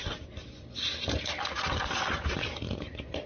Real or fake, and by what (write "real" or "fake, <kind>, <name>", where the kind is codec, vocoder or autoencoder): real